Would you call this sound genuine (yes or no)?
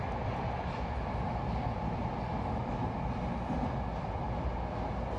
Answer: yes